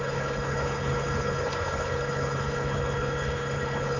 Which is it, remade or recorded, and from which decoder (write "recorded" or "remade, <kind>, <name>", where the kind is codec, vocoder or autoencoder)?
remade, codec, HILCodec